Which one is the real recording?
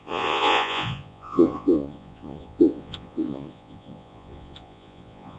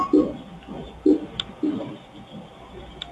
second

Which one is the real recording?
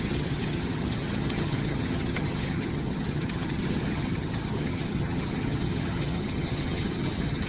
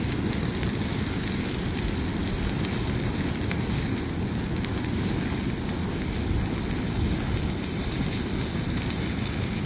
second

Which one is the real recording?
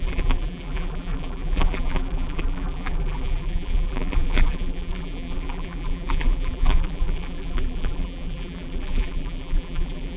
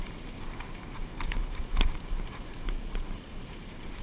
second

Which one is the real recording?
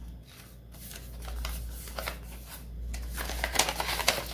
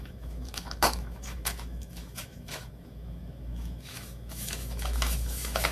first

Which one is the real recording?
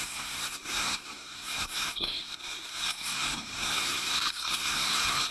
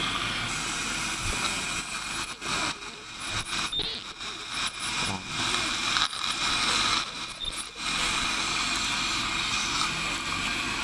second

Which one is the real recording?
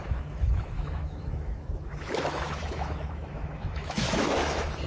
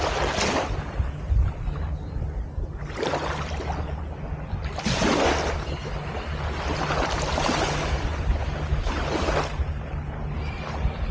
second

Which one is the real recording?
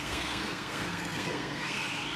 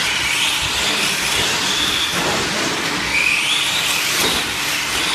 second